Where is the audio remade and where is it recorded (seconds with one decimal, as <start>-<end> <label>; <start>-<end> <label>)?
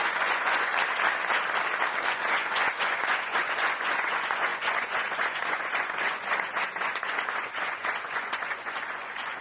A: 0.0-0.7 remade; 0.7-2.1 recorded; 2.1-9.4 remade